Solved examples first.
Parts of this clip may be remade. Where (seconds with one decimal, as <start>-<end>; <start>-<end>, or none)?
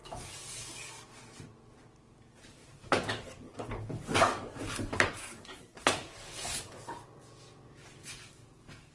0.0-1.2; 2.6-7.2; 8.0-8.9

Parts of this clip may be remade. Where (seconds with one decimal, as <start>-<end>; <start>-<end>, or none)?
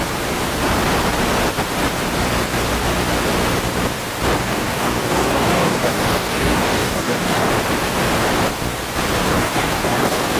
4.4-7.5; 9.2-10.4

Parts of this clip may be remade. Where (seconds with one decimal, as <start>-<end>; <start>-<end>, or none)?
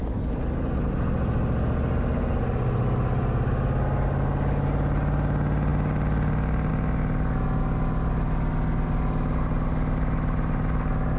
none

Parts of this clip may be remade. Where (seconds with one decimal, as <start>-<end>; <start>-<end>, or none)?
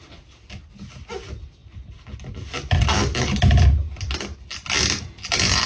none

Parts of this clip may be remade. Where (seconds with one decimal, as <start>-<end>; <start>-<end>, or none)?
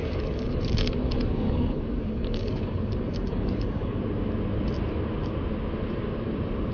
0.0-4.0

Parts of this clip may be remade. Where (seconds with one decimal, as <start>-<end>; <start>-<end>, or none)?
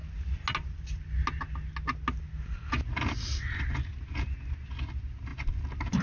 none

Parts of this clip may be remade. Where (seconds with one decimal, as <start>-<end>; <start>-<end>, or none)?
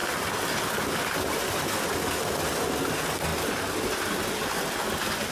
none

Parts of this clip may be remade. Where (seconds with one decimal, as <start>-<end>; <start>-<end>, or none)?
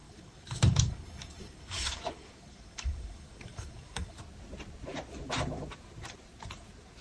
0.0-4.2